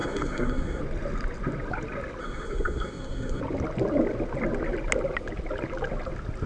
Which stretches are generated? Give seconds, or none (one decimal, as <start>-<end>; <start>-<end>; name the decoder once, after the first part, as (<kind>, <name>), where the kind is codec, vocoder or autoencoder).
0.0-0.8 (codec, SNAC); 2.2-3.4